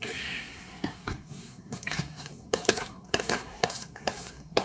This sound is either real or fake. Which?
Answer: fake